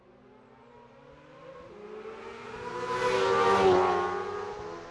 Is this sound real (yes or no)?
yes